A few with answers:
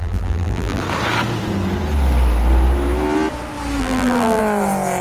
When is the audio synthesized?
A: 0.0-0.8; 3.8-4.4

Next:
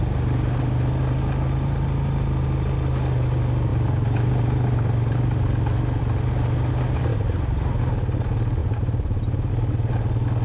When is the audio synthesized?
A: 7.1-7.8; 8.6-9.5